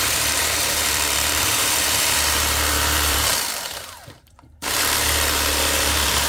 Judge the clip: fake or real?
fake